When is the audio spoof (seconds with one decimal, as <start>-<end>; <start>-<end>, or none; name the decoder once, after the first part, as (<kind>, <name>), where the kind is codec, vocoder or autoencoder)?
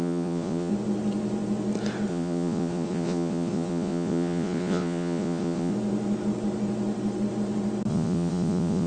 0.0-0.7 (vocoder, Vocos); 2.1-5.7; 7.9-8.9